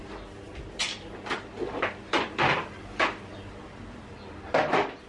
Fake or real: real